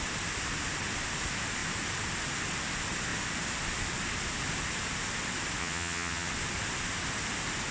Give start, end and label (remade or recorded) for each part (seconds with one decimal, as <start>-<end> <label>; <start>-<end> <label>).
0.0-5.6 recorded; 5.6-6.3 remade; 6.3-7.7 recorded